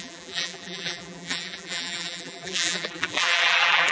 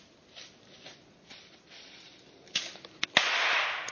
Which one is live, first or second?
second